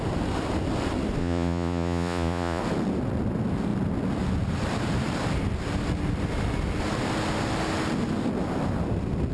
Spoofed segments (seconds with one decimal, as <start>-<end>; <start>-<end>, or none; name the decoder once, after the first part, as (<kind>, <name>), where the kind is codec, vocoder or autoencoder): 1.2-2.6 (vocoder, Vocos)